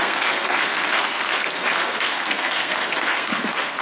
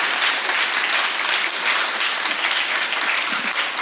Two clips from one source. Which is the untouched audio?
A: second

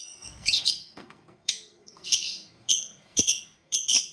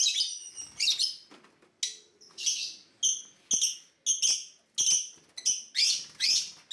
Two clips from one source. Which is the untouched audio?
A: second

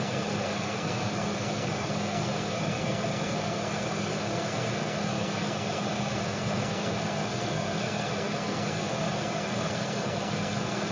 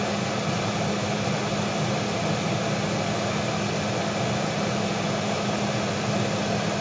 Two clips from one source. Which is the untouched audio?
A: second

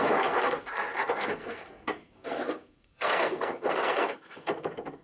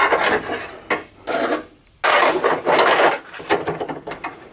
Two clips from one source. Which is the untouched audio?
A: second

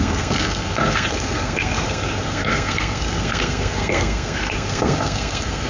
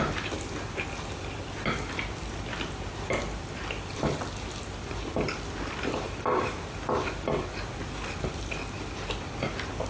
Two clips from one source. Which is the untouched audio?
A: second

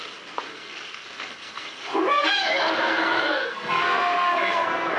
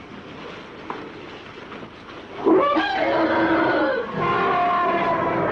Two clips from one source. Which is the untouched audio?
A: second